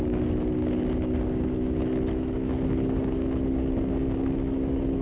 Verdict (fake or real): fake